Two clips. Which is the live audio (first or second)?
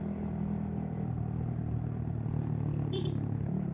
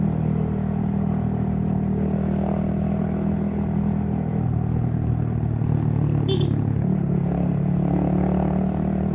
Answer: second